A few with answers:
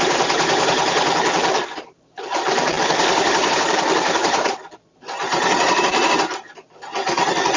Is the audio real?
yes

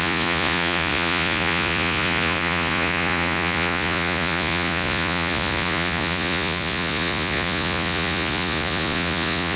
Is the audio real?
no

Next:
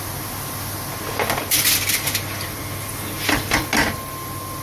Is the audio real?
yes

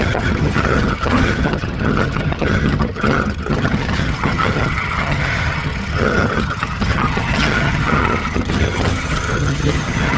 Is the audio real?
no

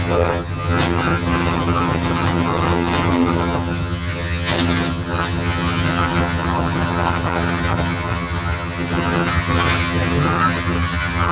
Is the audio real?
no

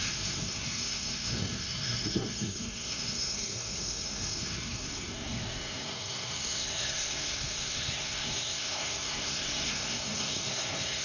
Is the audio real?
no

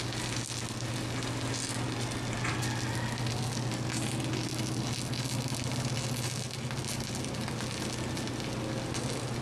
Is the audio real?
yes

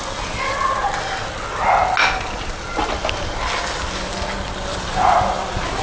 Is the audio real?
yes